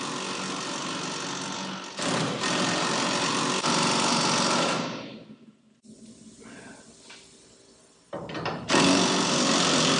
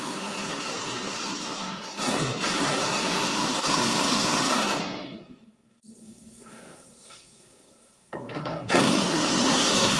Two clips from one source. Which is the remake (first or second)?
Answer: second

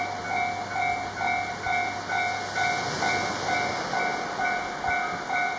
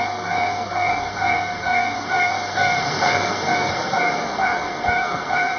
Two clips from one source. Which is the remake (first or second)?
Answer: second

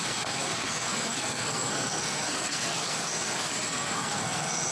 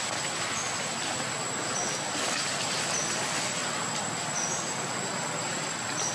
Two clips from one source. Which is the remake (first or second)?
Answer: first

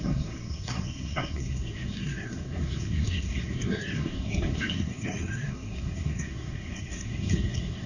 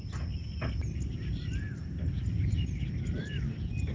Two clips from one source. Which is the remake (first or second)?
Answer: first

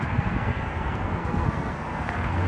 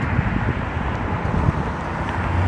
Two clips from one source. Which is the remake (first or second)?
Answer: first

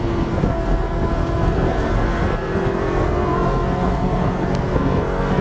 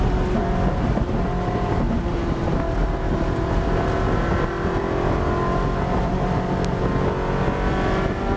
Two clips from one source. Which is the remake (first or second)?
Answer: first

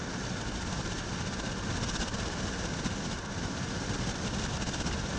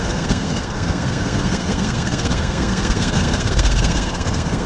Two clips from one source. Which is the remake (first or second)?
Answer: second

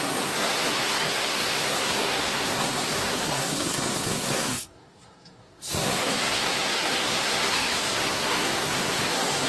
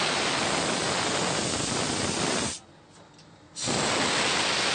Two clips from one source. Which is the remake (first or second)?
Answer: first